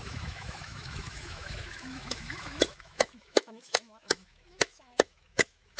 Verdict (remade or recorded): remade